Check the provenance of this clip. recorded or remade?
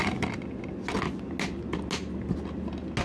recorded